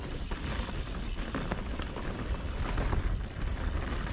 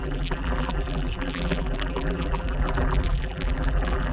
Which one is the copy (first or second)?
second